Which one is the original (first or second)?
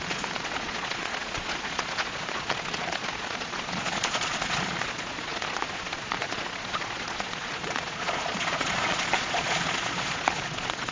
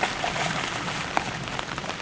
second